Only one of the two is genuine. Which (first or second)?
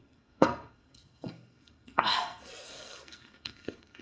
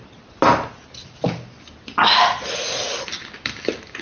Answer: second